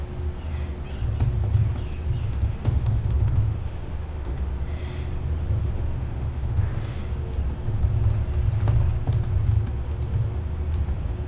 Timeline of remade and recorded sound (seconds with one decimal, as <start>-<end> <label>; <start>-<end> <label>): 0.0-2.2 recorded; 2.2-4.5 remade; 4.5-5.6 recorded; 5.6-7.0 remade; 7.0-11.3 recorded